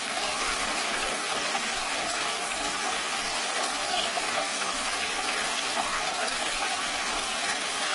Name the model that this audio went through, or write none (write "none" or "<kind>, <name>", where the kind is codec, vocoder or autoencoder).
codec, DAC